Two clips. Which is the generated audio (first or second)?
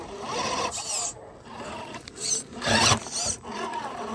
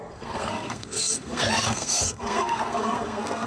second